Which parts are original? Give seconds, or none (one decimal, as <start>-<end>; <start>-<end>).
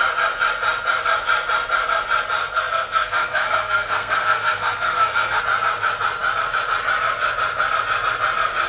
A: 0.0-2.4; 5.4-8.7